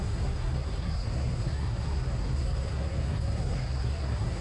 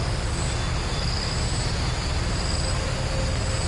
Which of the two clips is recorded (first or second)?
second